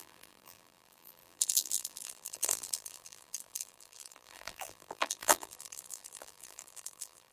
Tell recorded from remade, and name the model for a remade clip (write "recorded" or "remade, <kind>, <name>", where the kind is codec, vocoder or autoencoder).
remade, vocoder, BigVGAN v2